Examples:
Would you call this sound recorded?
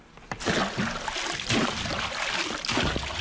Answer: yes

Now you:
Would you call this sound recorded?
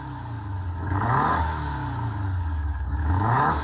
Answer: no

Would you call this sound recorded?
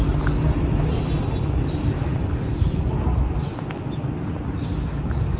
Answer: yes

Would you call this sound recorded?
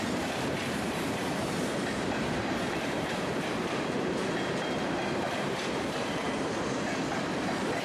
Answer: no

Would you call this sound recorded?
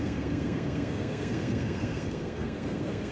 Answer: no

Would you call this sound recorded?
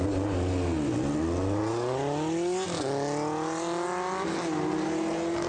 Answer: yes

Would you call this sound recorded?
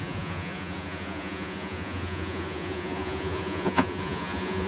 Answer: no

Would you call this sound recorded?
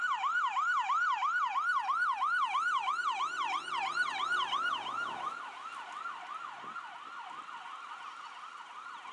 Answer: yes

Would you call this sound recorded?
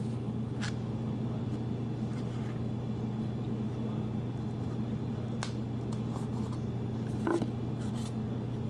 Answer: yes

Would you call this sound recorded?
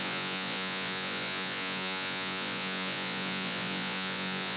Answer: no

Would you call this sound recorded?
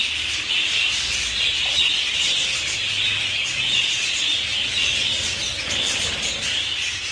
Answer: yes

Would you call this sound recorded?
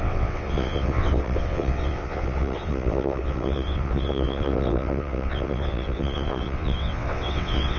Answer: no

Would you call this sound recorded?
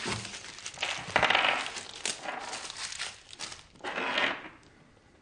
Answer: yes